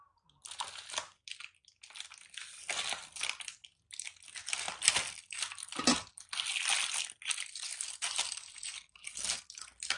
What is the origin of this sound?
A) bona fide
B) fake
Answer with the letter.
A